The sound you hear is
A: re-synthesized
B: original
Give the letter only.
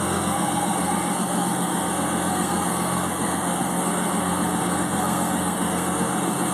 A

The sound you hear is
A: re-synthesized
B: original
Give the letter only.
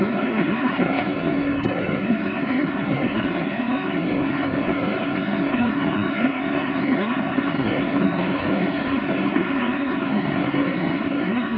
A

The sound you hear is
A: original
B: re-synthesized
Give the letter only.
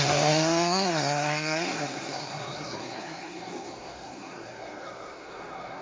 B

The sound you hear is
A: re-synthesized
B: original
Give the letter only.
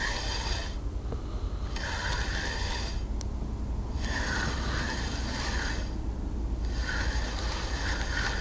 B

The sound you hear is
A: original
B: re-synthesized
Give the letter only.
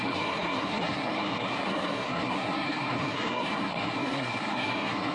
B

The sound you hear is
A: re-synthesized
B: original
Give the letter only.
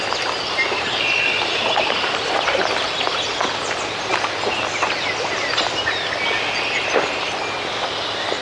B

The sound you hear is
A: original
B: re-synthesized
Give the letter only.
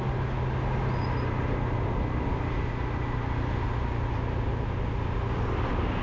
A